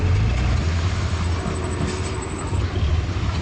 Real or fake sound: real